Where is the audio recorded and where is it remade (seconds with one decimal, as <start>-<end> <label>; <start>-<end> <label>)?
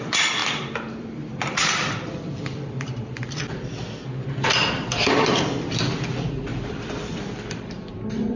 0.0-3.4 remade; 3.4-6.1 recorded; 6.1-8.4 remade